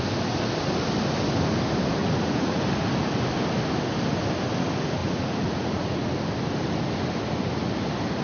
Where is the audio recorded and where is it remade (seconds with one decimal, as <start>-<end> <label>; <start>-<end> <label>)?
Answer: 0.0-2.0 recorded; 2.0-2.6 remade; 2.6-5.0 recorded; 5.0-6.1 remade; 6.1-8.2 recorded